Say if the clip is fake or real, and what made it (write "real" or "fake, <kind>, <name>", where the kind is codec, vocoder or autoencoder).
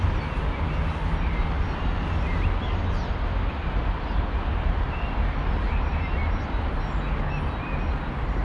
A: real